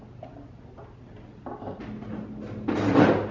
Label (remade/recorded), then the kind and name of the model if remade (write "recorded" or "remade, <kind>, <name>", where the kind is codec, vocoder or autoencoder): recorded